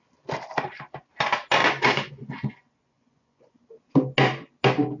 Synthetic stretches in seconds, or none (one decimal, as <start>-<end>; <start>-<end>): 1.6-3.6